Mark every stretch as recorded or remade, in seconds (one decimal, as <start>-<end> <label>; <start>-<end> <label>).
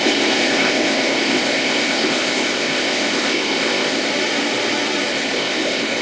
0.0-4.1 remade; 4.1-5.1 recorded; 5.1-6.0 remade